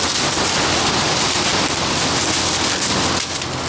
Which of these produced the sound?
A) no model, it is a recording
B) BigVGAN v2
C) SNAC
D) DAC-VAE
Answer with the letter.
A